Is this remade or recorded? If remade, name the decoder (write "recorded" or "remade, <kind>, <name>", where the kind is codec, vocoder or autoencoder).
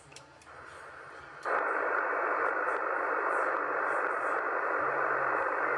remade, vocoder, BigVGAN v2